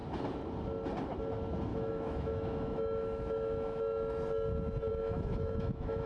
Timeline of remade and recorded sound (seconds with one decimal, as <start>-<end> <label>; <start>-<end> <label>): 0.0-1.7 recorded; 1.7-3.8 remade; 3.8-4.9 recorded; 4.9-6.1 remade